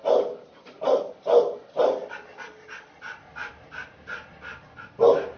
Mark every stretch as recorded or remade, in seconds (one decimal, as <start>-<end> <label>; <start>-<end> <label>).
0.0-5.4 recorded